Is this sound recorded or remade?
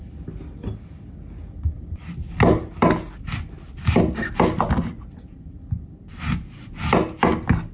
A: recorded